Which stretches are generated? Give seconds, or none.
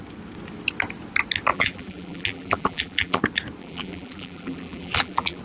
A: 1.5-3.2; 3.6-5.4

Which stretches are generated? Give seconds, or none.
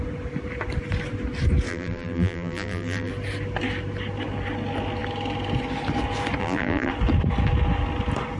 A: 1.7-3.1; 6.4-6.9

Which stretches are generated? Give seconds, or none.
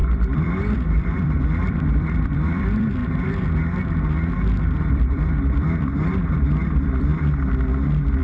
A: 0.0-3.0; 4.9-7.1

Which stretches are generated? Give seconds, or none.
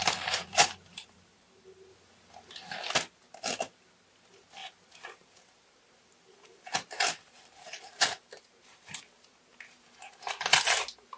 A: 0.0-1.5; 4.6-9.4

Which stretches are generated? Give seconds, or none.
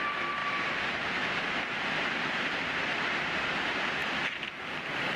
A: 0.0-0.4; 3.5-5.2